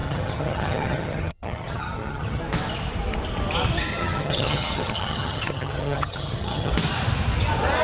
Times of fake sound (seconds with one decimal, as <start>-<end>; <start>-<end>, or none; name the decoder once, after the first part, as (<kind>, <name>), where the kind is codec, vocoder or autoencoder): 0.0-2.4 (vocoder, HiFi-GAN); 3.9-6.7